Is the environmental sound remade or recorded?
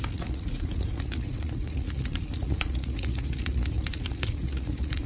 remade